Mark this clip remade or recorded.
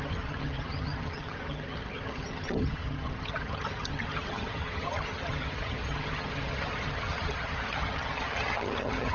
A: remade